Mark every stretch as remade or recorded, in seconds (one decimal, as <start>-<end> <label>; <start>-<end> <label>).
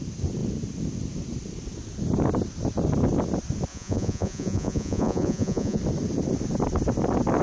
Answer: 0.0-3.7 recorded; 3.7-5.8 remade; 5.8-7.4 recorded